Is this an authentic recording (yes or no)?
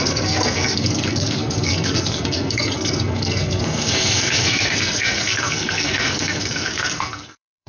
no